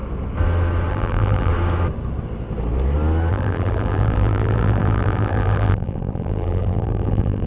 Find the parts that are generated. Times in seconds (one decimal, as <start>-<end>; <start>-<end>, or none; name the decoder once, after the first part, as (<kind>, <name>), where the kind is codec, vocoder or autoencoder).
0.9-1.5 (vocoder, BigVGAN v2); 3.3-7.5